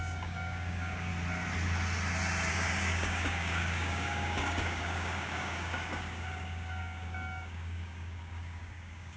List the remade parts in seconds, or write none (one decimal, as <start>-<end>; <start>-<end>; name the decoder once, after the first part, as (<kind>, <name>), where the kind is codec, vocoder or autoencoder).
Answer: 0.0-1.1 (codec, DAC); 2.5-9.2

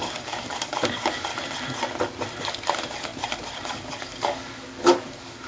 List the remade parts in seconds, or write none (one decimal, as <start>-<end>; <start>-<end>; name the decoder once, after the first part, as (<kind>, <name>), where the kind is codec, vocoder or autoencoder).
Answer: 0.0-1.3 (codec, DAC); 2.5-3.1; 3.6-5.5

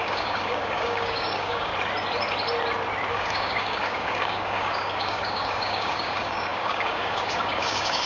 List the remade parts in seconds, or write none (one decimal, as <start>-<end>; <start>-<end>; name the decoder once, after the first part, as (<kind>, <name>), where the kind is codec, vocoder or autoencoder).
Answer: 0.0-1.7 (codec, DAC); 3.1-8.1

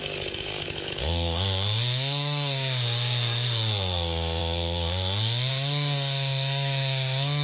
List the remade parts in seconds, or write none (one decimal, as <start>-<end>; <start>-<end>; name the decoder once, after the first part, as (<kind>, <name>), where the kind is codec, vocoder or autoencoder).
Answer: 0.0-7.4 (codec, DAC)

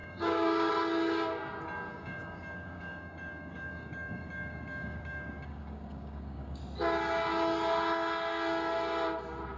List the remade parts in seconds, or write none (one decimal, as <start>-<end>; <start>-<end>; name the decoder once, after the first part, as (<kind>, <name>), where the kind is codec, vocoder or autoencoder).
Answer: 0.0-0.7 (codec, DAC); 1.9-6.6

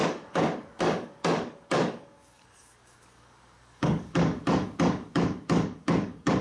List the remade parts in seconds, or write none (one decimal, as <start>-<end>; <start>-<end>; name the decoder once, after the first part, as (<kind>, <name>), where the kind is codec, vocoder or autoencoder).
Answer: 0.0-6.4 (codec, DAC)

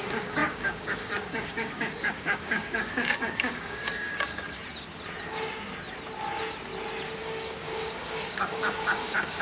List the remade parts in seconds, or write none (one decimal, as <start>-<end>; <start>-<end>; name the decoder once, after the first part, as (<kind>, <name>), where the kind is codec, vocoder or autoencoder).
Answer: 0.0-4.6 (codec, DAC); 7.2-9.4

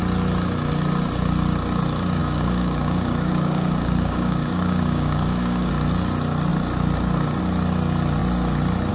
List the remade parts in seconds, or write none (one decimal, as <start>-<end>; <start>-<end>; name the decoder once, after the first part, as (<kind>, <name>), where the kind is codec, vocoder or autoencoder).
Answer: 2.2-5.7 (codec, DAC)